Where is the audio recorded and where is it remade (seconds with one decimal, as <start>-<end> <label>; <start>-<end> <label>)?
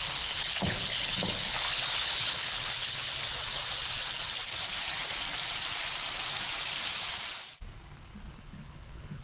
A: 0.0-3.2 remade; 3.2-8.4 recorded; 8.4-9.2 remade